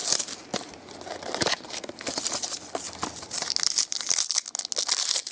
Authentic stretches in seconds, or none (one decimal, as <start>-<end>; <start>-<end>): 0.0-5.3